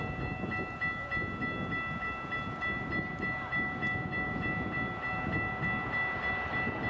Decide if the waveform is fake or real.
real